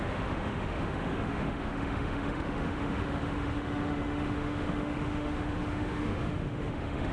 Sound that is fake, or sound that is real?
fake